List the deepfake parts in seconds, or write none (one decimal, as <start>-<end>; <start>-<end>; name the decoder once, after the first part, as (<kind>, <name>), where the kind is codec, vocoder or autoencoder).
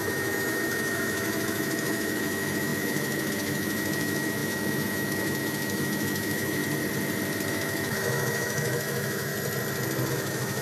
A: 0.0-6.6 (autoencoder, DAC-VAE); 7.5-9.3; 10.1-10.6